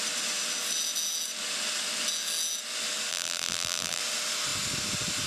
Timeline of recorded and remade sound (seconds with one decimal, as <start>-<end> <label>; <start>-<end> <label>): 0.0-3.1 recorded; 3.1-4.0 remade; 4.0-5.3 recorded